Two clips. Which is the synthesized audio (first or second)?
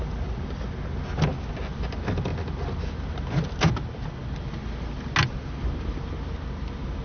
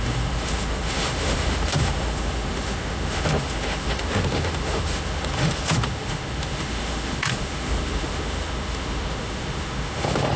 second